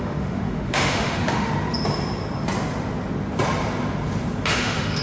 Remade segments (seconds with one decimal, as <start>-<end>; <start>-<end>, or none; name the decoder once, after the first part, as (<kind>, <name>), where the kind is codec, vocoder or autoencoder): 0.0-1.5 (autoencoder, DAC-VAE); 4.5-5.0